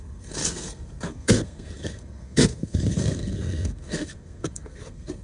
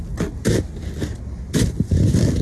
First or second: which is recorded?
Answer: second